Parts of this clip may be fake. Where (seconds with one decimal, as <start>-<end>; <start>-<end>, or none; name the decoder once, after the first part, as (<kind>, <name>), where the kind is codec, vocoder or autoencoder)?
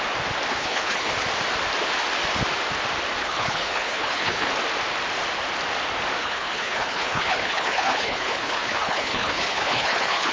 0.5-1.1 (codec, HILCodec); 3.2-4.5; 6.2-10.3